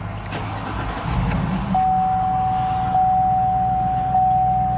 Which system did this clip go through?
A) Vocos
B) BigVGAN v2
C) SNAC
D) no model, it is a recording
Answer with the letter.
D